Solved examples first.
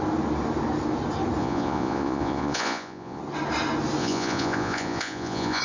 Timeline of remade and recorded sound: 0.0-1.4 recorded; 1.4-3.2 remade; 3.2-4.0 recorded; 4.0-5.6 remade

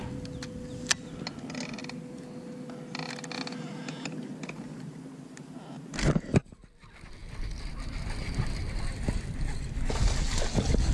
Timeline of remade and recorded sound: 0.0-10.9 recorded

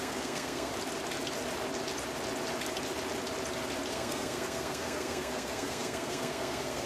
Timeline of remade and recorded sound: 0.0-0.7 remade; 0.7-3.9 recorded; 3.9-6.9 remade

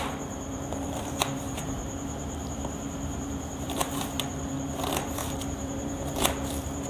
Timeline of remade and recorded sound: 0.0-6.9 remade

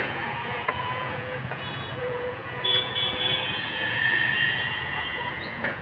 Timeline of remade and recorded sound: 0.0-5.8 remade

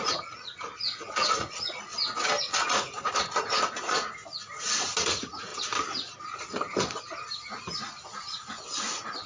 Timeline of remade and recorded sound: 0.0-1.9 remade; 1.9-2.4 recorded; 2.4-4.2 remade; 4.2-5.0 recorded; 5.0-5.5 remade; 5.5-8.2 recorded; 8.2-9.3 remade